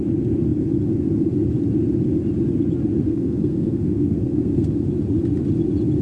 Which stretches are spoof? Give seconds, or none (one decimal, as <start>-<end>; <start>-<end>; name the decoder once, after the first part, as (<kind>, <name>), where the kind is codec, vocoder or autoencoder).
3.0-4.7 (codec, SNAC)